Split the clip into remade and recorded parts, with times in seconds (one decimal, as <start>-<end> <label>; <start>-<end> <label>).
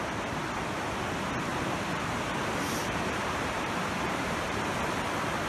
0.0-1.5 recorded; 1.5-4.8 remade; 4.8-5.5 recorded